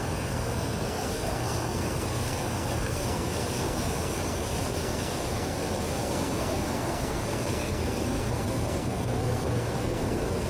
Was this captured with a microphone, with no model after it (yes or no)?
no